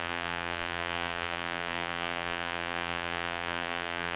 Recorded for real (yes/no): no